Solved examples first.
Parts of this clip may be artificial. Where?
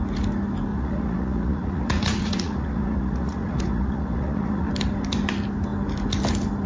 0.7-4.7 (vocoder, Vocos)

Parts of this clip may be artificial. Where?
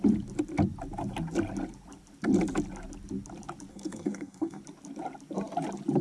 3.7-4.6 (codec, SNAC)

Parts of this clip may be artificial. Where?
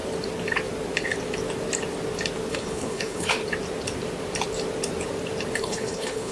2.5-3.4 (codec, HILCodec); 5.6-6.3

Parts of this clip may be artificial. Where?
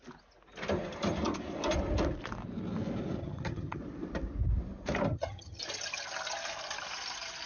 3.2-3.8 (vocoder, HiFi-GAN); 5.1-5.6